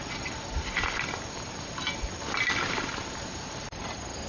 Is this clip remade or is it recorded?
recorded